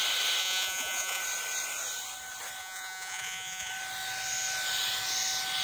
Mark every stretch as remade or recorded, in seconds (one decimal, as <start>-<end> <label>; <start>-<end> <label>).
0.0-0.4 recorded; 0.4-1.2 remade; 1.2-2.6 recorded; 2.6-3.7 remade; 3.7-5.6 recorded